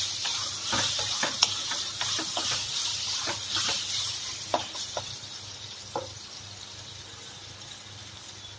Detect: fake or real real